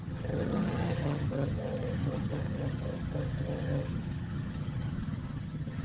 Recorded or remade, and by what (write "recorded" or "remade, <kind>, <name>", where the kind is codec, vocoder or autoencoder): remade, vocoder, HiFi-GAN